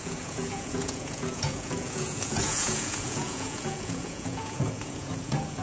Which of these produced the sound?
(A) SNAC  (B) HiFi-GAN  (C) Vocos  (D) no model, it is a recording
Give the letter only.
C